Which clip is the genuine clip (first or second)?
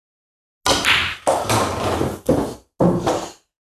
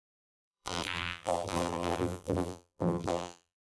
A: first